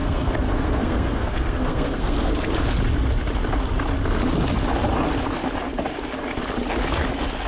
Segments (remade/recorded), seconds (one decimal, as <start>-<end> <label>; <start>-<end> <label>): 0.0-2.5 remade; 2.5-7.5 recorded